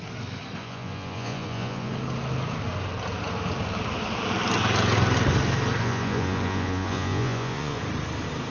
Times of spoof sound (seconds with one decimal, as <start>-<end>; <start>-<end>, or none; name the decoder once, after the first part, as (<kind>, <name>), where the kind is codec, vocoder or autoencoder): 0.6-1.9 (vocoder, Vocos); 5.8-7.8